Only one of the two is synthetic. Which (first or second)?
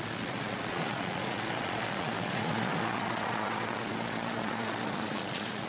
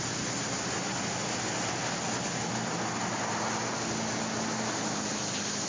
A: first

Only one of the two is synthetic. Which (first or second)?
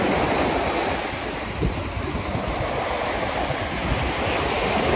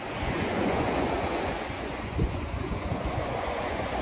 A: second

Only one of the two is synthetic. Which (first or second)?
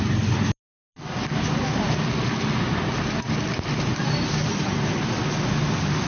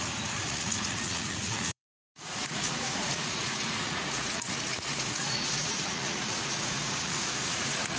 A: second